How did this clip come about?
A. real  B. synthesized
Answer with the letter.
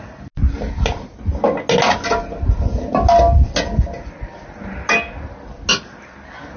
A